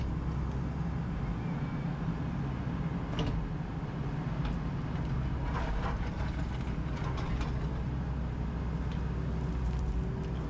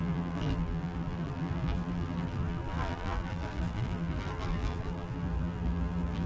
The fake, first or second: second